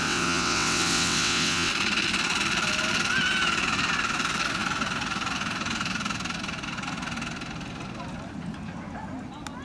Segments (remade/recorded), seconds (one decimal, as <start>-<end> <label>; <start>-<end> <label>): 0.0-1.7 remade; 1.7-9.6 recorded